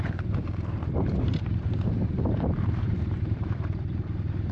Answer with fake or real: fake